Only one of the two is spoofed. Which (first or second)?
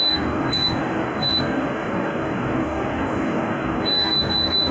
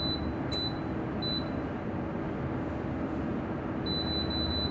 first